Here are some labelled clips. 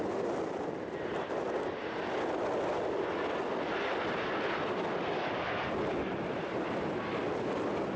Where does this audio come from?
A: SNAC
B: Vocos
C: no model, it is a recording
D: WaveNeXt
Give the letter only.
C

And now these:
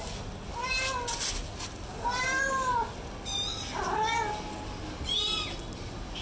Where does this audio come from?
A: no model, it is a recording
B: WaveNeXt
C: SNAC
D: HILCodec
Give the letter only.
A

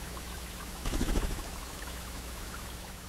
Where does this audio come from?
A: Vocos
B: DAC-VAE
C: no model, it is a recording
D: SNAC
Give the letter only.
B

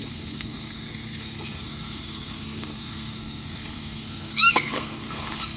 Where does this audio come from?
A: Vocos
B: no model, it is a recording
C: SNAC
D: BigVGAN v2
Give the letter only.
C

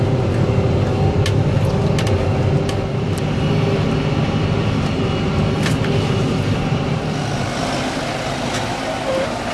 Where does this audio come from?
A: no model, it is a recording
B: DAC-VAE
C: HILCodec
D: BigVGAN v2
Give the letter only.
A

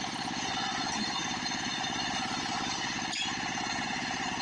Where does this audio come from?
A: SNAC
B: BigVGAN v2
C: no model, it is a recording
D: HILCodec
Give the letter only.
C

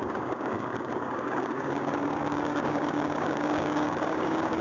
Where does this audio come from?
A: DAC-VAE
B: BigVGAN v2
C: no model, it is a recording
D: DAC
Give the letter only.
D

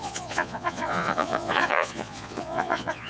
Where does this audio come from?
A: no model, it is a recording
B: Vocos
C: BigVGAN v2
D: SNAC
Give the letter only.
B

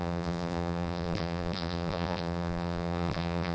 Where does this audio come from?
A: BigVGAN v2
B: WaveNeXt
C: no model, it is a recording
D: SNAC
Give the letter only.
A